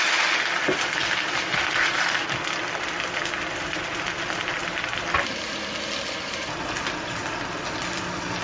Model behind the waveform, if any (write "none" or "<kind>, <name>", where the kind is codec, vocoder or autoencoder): none